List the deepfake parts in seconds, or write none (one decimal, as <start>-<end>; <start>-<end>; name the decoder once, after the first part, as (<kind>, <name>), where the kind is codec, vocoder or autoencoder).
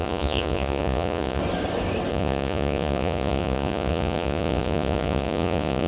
0.0-1.4 (vocoder, Vocos); 2.1-5.9